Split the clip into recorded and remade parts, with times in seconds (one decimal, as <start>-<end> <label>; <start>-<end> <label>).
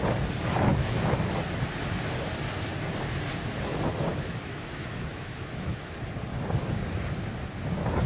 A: 0.0-0.7 recorded; 0.7-1.3 remade; 1.3-4.1 recorded; 4.1-6.0 remade; 6.0-8.1 recorded